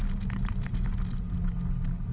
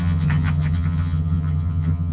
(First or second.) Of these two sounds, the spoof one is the second